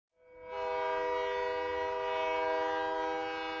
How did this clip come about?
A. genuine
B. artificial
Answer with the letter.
A